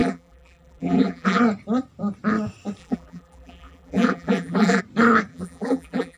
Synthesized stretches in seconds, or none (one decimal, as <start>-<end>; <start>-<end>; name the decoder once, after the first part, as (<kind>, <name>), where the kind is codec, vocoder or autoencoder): 0.0-1.4 (vocoder, BigVGAN v2); 2.8-4.8; 5.3-6.2